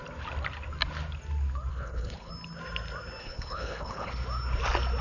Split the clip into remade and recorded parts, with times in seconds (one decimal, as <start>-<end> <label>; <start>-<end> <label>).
0.0-1.7 recorded; 1.7-2.3 remade; 2.3-3.2 recorded; 3.2-4.1 remade; 4.1-5.0 recorded